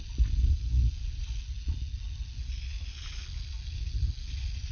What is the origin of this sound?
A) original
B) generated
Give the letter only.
A